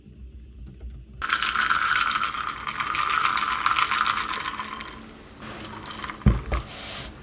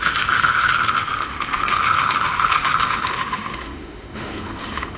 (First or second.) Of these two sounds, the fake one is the second